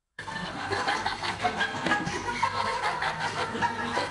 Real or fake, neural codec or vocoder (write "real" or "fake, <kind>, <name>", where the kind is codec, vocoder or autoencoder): fake, codec, SNAC